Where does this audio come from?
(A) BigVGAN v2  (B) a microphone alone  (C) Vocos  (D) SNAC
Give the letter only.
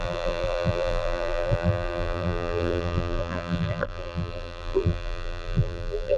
A